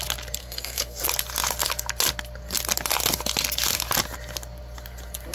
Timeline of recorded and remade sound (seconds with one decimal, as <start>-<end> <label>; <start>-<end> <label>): 0.0-0.4 recorded; 0.4-1.0 remade; 1.0-5.3 recorded